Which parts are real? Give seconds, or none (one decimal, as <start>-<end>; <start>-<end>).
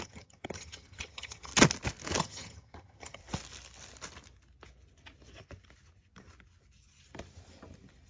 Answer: 1.5-2.2; 3.2-8.1